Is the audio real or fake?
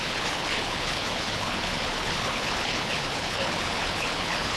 fake